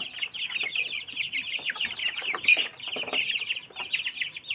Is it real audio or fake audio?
real